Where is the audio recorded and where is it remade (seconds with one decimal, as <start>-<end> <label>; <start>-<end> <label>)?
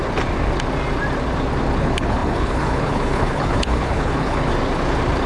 0.0-1.8 recorded; 1.8-4.5 remade; 4.5-5.3 recorded